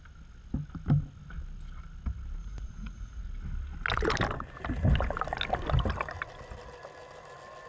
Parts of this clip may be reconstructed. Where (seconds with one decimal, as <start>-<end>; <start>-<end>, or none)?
2.4-3.2